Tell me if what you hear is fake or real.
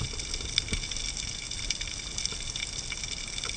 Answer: real